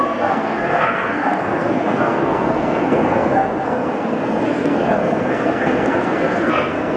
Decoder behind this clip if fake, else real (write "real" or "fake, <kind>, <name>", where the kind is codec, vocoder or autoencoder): fake, codec, SNAC